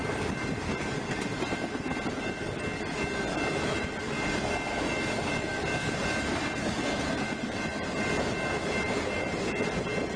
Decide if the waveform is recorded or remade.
recorded